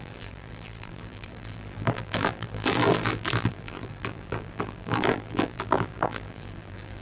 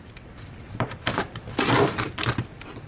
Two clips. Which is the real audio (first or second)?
second